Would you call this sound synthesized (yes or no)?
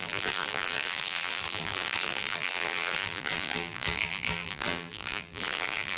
yes